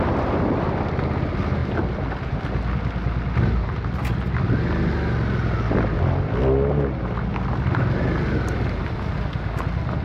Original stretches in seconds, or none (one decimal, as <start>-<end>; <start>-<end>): 0.0-10.0